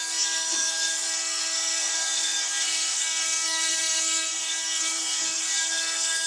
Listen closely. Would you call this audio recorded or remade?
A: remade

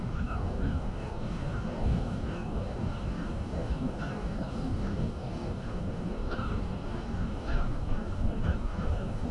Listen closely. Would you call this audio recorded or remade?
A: remade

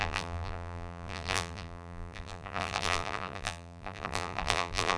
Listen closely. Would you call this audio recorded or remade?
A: remade